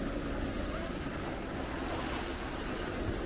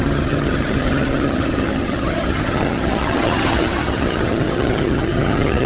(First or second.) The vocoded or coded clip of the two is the second